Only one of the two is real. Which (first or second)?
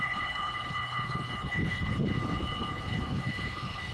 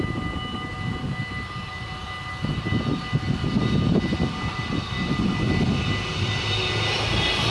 second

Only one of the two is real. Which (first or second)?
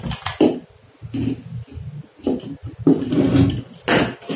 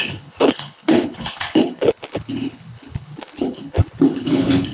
first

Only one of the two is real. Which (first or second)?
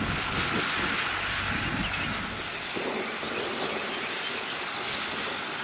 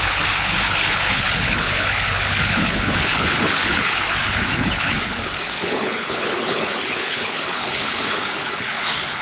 first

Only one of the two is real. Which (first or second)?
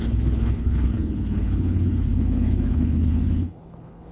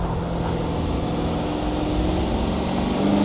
second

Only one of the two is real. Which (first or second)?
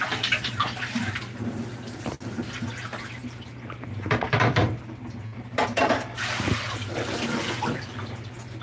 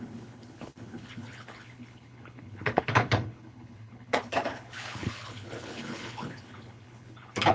first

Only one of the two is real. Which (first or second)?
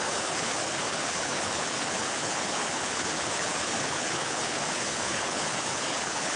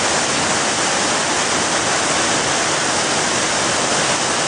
second